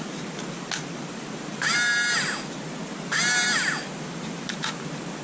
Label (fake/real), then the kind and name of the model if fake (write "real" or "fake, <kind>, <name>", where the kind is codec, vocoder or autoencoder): real